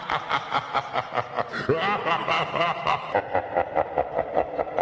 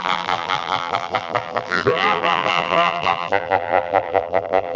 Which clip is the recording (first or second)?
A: first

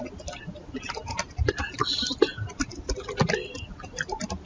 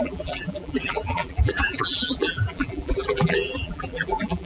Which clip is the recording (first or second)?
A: first